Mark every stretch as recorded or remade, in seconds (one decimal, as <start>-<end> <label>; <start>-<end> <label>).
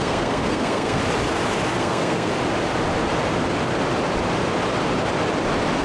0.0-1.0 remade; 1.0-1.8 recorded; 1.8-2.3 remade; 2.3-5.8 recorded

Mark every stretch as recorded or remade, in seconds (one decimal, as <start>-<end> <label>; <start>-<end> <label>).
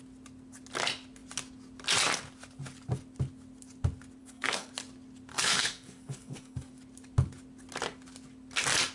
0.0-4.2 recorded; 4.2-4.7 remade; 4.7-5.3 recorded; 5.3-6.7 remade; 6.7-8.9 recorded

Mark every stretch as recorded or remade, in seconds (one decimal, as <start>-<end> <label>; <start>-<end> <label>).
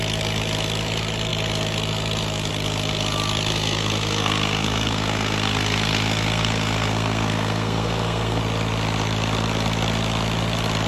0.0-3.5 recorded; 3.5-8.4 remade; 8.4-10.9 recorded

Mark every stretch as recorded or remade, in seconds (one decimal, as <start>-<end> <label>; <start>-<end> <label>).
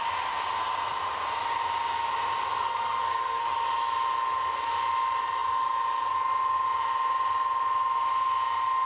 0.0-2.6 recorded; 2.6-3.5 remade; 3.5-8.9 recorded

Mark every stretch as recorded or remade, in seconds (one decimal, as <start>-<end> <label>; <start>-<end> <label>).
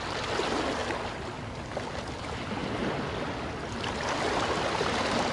0.0-5.3 recorded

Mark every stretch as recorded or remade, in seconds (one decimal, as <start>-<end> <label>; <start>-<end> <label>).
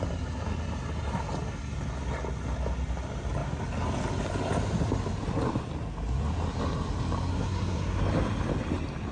0.0-7.3 recorded; 7.3-8.0 remade; 8.0-9.1 recorded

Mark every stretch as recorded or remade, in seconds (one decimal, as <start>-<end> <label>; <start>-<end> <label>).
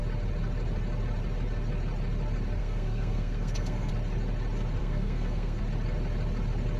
0.0-2.6 recorded; 2.6-3.9 remade; 3.9-4.8 recorded; 4.8-5.6 remade; 5.6-6.8 recorded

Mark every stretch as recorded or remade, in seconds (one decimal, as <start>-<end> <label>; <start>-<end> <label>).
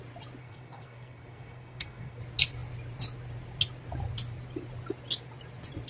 0.0-0.4 recorded; 0.4-2.2 remade; 2.2-5.9 recorded